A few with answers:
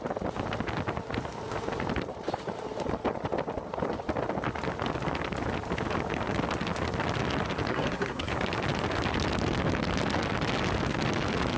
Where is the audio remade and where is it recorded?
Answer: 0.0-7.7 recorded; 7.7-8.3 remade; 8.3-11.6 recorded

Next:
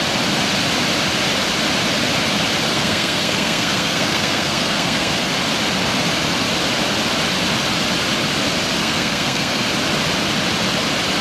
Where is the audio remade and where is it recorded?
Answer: 0.0-2.7 recorded; 2.7-5.3 remade; 5.3-8.8 recorded; 8.8-9.7 remade; 9.7-11.2 recorded

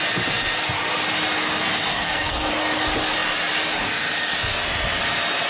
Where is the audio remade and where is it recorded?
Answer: 0.0-1.9 recorded; 1.9-2.5 remade; 2.5-5.5 recorded